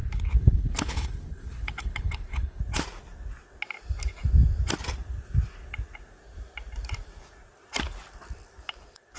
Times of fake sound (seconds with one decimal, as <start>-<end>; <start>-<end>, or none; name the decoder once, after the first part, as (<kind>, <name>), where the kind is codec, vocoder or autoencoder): 0.0-2.6 (codec, HILCodec)